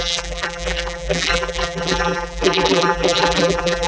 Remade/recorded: remade